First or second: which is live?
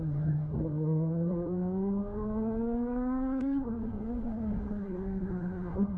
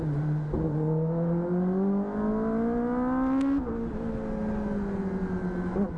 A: second